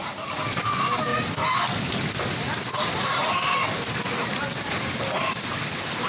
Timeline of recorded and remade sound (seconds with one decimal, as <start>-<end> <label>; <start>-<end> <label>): 0.0-1.1 recorded; 1.1-4.5 remade; 4.5-6.1 recorded